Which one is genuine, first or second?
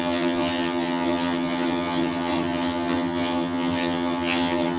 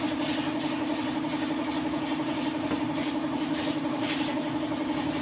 second